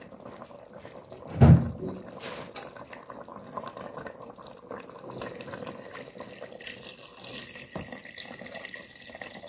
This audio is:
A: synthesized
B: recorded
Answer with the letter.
B